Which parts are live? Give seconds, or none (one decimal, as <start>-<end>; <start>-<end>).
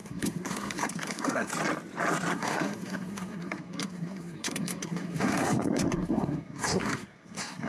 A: 1.5-2.3